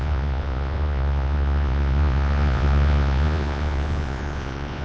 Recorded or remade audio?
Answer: remade